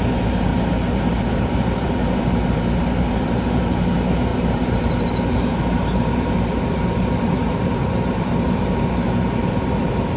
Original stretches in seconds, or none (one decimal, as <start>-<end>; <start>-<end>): none